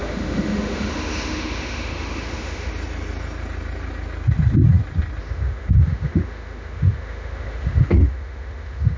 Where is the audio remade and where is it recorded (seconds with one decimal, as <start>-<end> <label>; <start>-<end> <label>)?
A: 0.0-2.7 remade; 2.7-5.2 recorded; 5.2-9.0 remade